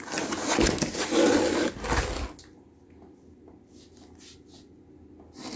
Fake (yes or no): no